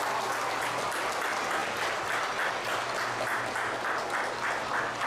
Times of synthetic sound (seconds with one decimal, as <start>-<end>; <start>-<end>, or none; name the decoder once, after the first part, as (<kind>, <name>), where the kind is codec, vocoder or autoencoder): 0.0-1.6 (vocoder, BigVGAN v2)